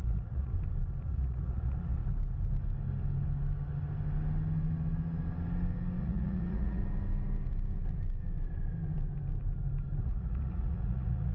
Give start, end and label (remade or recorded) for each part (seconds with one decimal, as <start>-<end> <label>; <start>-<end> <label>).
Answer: 0.0-0.5 remade; 0.5-1.1 recorded; 1.1-2.0 remade; 2.0-6.0 recorded; 6.0-6.8 remade; 6.8-10.0 recorded; 10.0-11.3 remade